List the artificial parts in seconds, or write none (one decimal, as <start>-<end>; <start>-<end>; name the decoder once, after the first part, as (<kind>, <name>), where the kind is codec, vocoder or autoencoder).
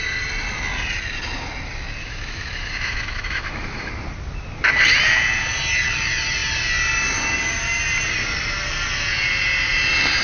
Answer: 2.0-3.9 (autoencoder, DAC-VAE)